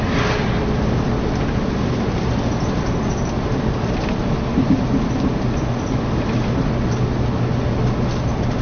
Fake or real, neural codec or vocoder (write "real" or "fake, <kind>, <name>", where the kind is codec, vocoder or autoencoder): real